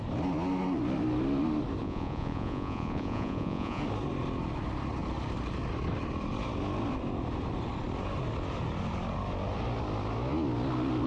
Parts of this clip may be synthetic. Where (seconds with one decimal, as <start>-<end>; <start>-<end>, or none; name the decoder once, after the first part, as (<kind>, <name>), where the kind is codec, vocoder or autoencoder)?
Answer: 1.8-3.8 (vocoder, Vocos)